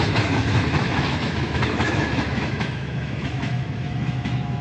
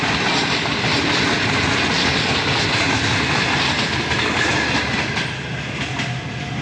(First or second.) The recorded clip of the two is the second